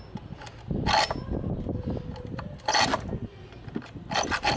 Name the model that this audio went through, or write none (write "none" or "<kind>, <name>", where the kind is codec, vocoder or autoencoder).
none